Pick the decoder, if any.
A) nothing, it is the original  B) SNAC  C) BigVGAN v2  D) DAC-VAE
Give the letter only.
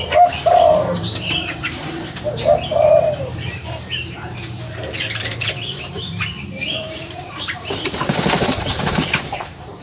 C